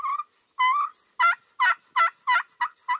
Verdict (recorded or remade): recorded